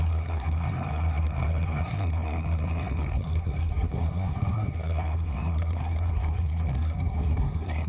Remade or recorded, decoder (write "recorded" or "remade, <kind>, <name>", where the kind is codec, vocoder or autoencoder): remade, codec, SNAC